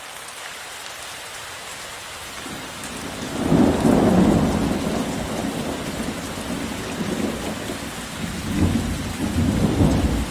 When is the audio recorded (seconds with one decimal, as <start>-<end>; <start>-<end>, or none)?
0.0-5.4; 6.8-10.3